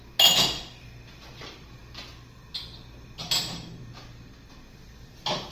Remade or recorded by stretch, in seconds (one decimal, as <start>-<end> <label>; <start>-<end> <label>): 0.0-5.5 recorded